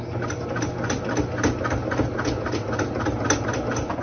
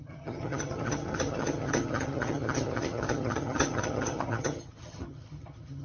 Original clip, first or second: first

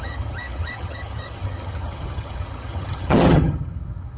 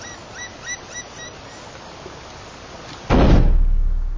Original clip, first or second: second